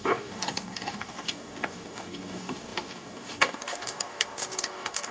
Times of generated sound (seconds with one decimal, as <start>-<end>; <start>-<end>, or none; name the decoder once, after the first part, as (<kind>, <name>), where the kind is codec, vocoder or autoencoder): 0.0-5.1 (codec, DAC)